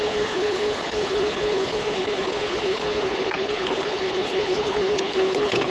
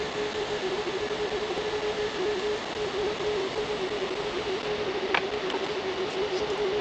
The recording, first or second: second